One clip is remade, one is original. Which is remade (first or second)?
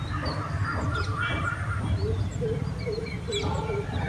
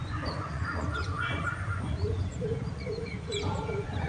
second